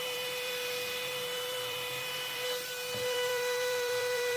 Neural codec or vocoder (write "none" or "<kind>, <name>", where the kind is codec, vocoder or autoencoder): vocoder, BigVGAN v2